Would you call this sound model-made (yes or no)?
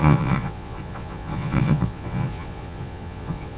yes